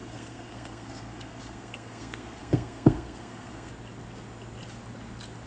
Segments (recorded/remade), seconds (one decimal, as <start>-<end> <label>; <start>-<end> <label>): 0.0-3.7 remade; 3.7-5.5 recorded